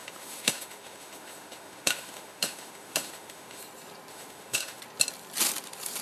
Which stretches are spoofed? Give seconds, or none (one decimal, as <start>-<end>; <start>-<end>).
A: 0.0-3.6; 4.1-4.8